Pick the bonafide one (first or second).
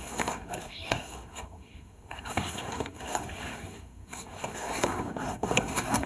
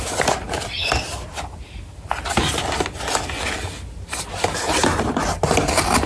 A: second